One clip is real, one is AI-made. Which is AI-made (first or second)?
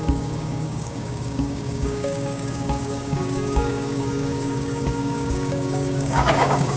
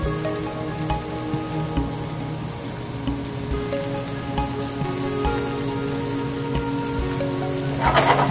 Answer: first